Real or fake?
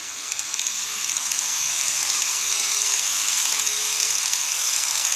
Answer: fake